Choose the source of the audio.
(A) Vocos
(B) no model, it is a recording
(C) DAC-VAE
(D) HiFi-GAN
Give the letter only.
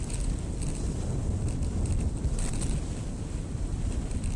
B